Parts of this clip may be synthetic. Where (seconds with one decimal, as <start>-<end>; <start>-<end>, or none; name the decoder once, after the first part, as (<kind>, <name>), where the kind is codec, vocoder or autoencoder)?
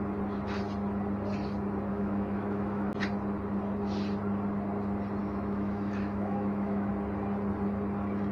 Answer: 1.9-2.9 (autoencoder, DAC-VAE); 5.2-6.9